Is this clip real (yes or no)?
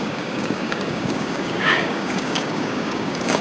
no